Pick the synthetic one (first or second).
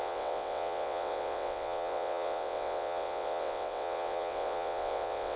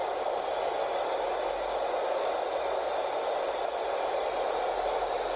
first